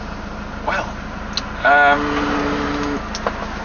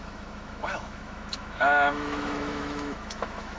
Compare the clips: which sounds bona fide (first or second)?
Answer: first